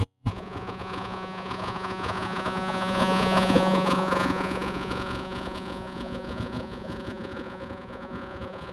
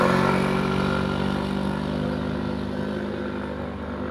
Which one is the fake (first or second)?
first